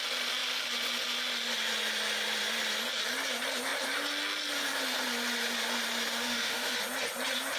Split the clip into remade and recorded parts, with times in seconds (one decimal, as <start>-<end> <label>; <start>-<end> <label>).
0.0-6.1 recorded; 6.1-6.8 remade; 6.8-7.6 recorded